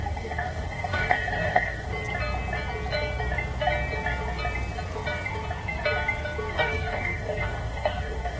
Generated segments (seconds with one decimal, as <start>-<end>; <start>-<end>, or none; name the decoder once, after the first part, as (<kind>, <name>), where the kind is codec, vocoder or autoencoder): 0.0-1.9 (codec, DAC); 6.5-8.4